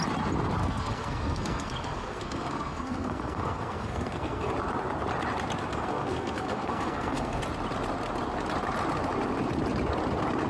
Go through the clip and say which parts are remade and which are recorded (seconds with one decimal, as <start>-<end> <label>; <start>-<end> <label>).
0.0-0.6 recorded; 0.6-4.5 remade; 4.5-5.7 recorded; 5.7-7.4 remade; 7.4-10.5 recorded